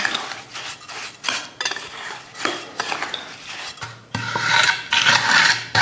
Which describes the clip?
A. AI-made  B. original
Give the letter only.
B